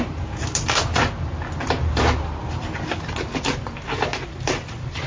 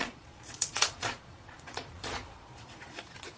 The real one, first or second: first